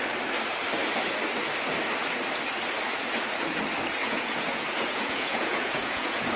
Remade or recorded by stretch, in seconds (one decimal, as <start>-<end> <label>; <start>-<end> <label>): 0.0-4.0 recorded; 4.0-6.4 remade